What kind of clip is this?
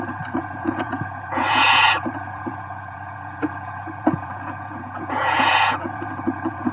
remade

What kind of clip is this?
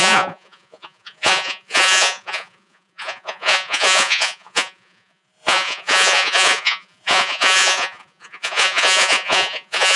remade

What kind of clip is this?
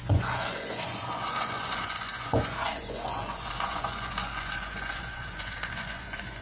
remade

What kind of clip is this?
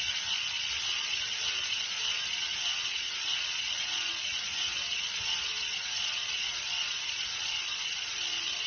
remade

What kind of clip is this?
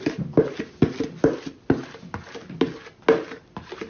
recorded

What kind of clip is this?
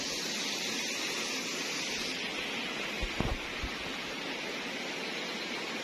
recorded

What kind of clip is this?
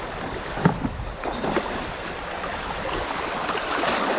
recorded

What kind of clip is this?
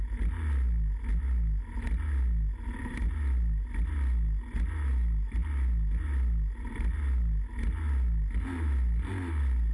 recorded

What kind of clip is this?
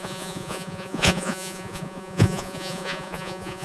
remade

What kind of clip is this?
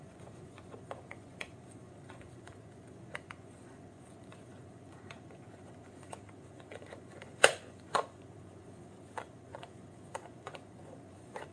remade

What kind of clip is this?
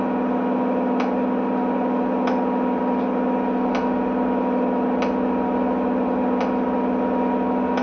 recorded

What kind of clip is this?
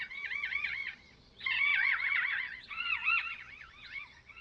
remade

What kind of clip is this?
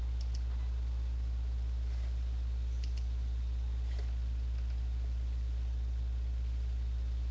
recorded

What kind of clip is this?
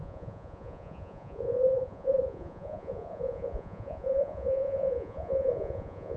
remade